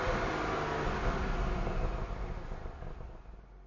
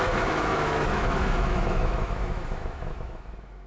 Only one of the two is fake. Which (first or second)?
second